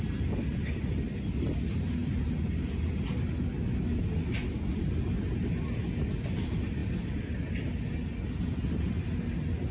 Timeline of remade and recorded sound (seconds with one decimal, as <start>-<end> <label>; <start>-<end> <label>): 0.0-9.7 recorded